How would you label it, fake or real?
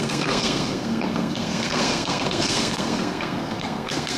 fake